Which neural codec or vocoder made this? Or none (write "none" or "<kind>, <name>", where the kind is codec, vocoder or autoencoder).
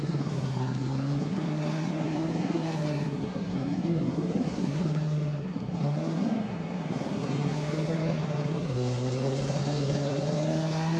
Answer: codec, SNAC